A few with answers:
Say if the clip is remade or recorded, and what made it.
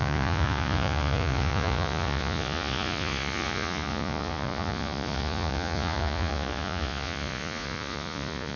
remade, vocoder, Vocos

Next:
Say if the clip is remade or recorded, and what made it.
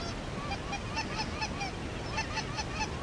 recorded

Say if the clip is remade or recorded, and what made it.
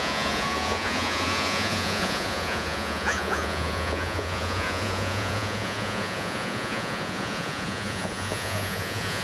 remade, vocoder, Vocos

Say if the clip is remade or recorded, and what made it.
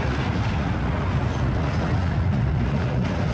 remade, vocoder, Vocos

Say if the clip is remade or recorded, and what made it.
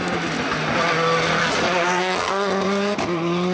recorded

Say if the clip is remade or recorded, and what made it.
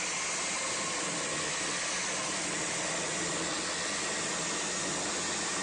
recorded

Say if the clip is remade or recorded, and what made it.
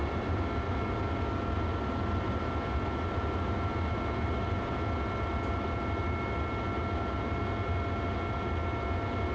recorded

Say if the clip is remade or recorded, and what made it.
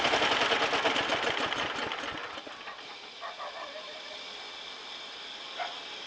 recorded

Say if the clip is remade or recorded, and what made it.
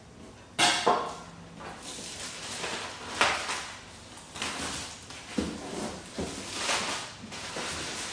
recorded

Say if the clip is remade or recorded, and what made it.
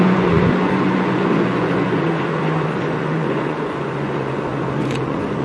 remade, vocoder, Vocos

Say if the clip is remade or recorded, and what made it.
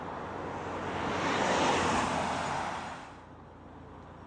recorded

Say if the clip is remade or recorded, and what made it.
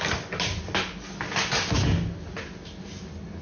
recorded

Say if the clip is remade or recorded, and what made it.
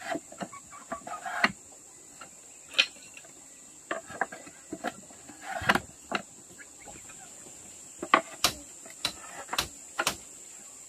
recorded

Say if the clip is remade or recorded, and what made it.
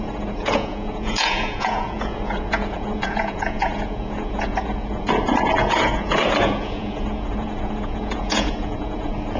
remade, vocoder, Vocos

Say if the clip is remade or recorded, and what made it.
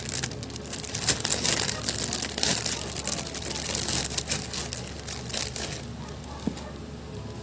recorded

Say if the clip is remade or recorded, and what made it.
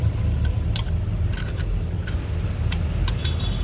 recorded